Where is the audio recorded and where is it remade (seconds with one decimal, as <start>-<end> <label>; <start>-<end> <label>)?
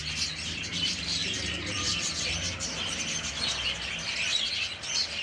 0.0-1.2 recorded; 1.2-1.8 remade; 1.8-5.2 recorded